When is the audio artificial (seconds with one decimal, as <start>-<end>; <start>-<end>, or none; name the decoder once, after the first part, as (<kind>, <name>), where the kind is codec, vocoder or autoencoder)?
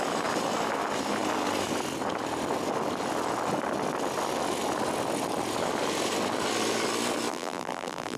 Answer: 7.3-8.2 (vocoder, BigVGAN v2)